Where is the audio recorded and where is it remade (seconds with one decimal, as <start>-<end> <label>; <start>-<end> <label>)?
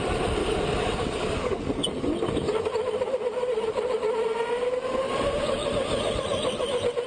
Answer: 0.0-0.4 recorded; 0.4-1.6 remade; 1.6-7.1 recorded